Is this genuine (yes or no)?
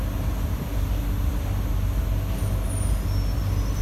yes